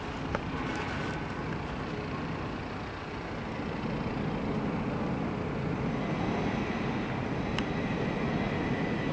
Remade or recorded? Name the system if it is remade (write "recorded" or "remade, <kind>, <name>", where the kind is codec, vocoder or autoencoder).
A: recorded